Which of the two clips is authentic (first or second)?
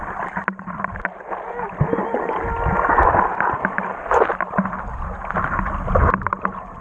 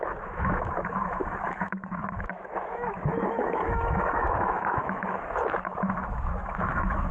first